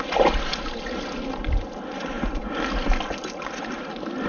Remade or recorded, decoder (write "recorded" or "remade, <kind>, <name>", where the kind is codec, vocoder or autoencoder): recorded